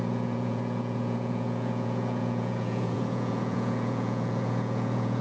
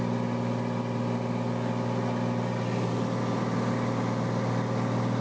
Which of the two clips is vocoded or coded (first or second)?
first